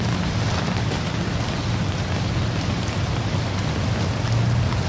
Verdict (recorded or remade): recorded